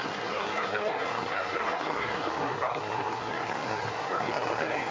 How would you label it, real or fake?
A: fake